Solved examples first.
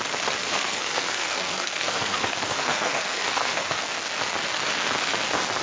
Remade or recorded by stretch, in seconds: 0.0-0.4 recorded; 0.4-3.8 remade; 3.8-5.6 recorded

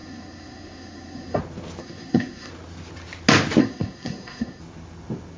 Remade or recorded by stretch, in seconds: 0.0-1.4 remade; 1.4-1.8 recorded; 1.8-2.5 remade; 2.5-3.6 recorded; 3.6-4.6 remade; 4.6-5.4 recorded

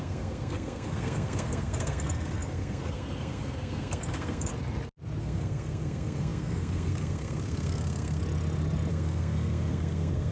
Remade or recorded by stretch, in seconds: 0.0-4.5 remade; 4.5-5.2 recorded; 5.2-8.2 remade; 8.2-8.9 recorded; 8.9-10.3 remade

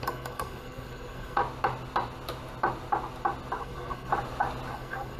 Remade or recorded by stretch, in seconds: 0.0-1.4 remade; 1.4-3.6 recorded; 3.6-4.1 remade; 4.1-4.7 recorded; 4.7-5.2 remade

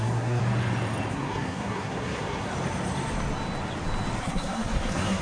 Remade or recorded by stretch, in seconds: 0.0-0.4 remade; 0.4-1.1 recorded; 1.1-2.5 remade; 2.5-4.2 recorded; 4.2-5.2 remade

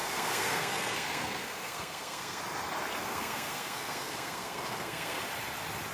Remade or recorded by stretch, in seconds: 0.0-2.4 remade; 2.4-3.0 recorded; 3.0-5.2 remade; 5.2-5.9 recorded